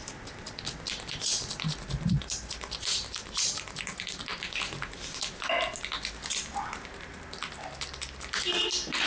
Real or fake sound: real